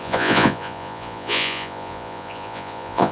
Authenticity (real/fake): fake